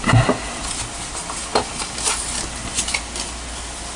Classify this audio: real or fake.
real